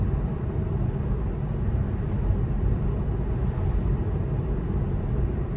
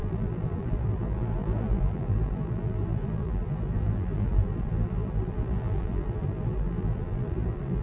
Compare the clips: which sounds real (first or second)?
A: first